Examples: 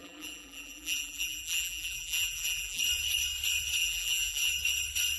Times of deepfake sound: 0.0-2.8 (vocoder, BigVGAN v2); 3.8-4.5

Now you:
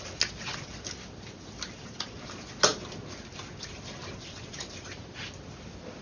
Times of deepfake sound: 2.7-3.3 (vocoder, BigVGAN v2)